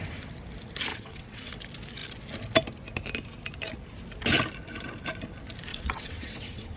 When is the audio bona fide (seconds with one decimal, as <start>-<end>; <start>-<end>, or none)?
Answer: 0.0-0.9; 1.5-5.7